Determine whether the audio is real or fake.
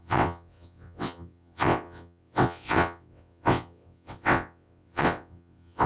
fake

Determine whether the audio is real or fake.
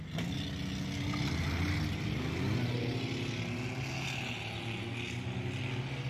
real